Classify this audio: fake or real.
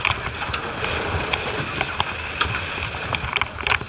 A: real